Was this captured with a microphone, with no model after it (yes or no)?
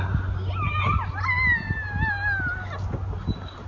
yes